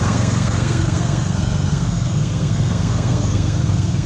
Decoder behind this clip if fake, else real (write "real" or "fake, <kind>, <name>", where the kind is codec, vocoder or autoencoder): fake, codec, SNAC